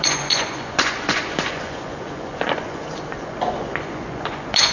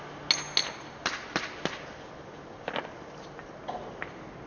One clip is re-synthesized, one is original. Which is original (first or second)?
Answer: second